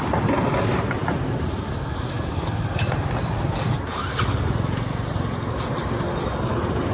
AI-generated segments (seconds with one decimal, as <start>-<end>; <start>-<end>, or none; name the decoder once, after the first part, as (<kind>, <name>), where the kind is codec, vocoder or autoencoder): none